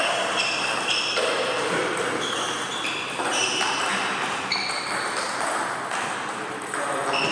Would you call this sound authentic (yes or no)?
yes